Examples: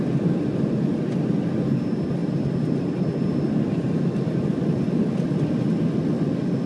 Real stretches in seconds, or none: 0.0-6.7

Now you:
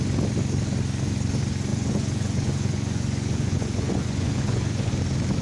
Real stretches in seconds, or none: 0.0-1.7; 4.9-5.4

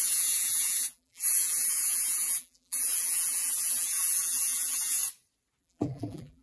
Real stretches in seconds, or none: 5.0-5.6